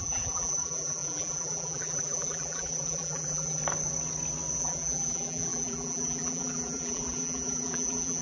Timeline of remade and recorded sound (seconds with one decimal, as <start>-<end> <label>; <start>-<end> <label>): 0.0-3.6 remade; 3.6-4.6 recorded; 4.6-8.2 remade